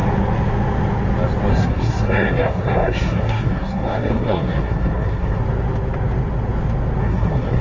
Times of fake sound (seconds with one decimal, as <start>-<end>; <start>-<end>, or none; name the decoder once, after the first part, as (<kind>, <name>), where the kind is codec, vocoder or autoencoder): 1.5-5.4 (codec, SNAC); 7.0-7.6